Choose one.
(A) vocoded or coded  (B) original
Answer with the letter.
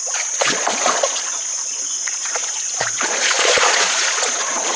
A